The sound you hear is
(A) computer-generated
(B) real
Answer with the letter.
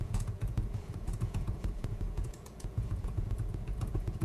A